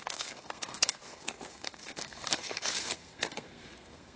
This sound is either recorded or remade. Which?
remade